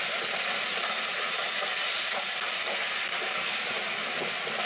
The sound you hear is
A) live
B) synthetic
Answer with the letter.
A